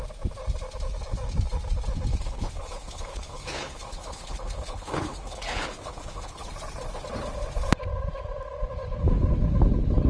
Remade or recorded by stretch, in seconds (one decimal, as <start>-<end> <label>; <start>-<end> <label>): 0.0-2.1 recorded; 2.1-6.5 remade; 6.5-10.1 recorded